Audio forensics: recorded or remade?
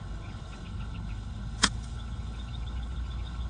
remade